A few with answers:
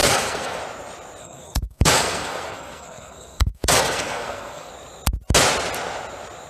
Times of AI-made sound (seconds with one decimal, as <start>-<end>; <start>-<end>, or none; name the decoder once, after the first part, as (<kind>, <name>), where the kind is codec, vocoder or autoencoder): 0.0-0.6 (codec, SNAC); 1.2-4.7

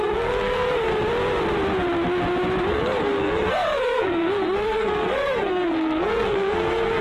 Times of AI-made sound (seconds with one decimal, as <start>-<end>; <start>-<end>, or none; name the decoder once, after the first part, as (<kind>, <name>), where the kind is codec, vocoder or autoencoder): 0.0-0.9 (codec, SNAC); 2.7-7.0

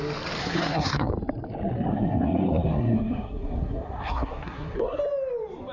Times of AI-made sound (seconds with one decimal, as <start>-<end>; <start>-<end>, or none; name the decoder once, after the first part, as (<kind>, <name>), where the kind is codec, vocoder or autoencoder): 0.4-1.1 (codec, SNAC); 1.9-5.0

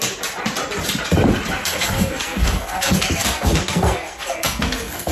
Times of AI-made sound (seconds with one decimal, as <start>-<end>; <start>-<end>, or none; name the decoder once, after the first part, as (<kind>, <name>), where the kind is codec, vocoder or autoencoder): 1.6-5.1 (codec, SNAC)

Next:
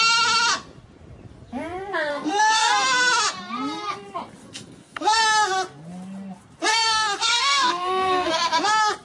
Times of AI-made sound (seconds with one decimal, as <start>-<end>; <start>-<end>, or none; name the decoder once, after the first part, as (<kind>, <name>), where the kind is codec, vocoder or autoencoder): 2.1-2.7 (codec, SNAC); 4.4-5.2; 6.7-8.3

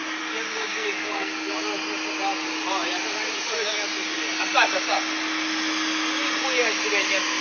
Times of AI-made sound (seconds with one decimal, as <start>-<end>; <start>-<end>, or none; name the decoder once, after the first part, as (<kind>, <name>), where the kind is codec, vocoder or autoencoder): 0.7-1.5 (codec, SNAC)